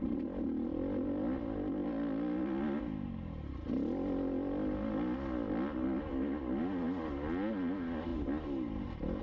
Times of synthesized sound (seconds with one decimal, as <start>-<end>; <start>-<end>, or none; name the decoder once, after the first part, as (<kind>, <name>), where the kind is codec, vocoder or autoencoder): none